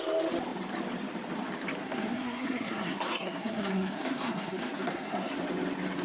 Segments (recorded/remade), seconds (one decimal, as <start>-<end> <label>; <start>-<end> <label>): 0.0-1.8 recorded; 1.8-5.4 remade; 5.4-6.0 recorded